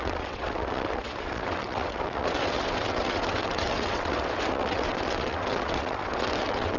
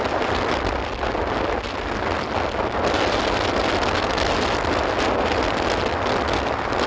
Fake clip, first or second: first